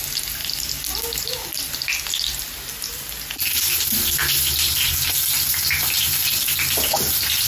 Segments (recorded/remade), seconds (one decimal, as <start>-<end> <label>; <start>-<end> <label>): 0.0-7.5 recorded